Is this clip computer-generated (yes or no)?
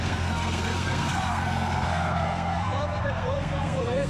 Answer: yes